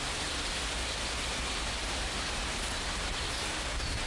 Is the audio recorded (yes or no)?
yes